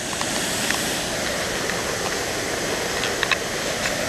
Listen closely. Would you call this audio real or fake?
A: real